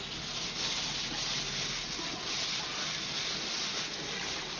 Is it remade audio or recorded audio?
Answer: recorded